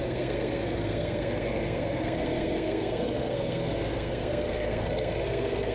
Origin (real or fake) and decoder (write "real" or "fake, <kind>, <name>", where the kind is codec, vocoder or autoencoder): fake, codec, SNAC